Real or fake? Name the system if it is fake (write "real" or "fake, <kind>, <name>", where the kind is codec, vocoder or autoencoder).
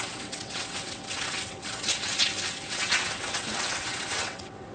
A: fake, vocoder, WaveNeXt